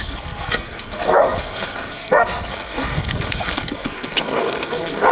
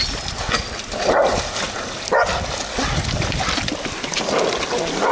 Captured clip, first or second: second